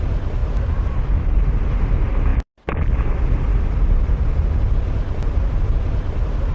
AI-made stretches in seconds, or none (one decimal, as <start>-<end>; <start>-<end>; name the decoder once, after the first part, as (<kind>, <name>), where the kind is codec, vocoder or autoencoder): none